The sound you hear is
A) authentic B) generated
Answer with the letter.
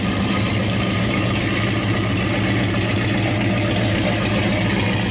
A